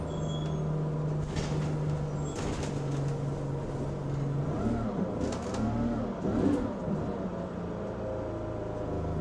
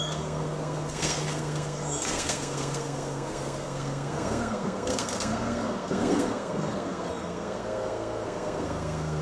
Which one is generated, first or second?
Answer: second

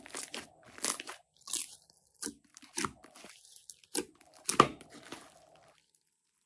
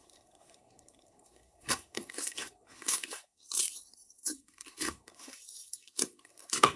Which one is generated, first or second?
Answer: second